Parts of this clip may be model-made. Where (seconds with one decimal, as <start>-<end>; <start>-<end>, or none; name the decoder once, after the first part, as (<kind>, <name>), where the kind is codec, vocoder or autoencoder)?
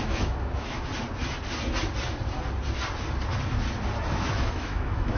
0.0-0.9 (autoencoder, DAC-VAE); 4.0-5.2